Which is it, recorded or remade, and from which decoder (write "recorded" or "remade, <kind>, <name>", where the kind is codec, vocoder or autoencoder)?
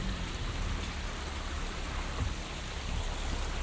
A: recorded